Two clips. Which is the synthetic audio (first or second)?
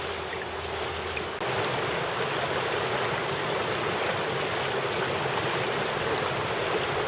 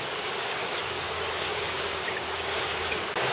second